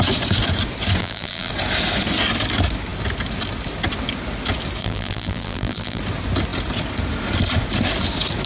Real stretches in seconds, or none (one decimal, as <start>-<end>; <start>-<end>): 0.0-1.0; 1.5-4.8; 6.0-8.5